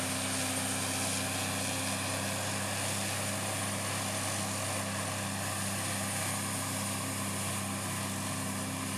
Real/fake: real